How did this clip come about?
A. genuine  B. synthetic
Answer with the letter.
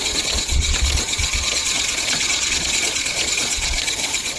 B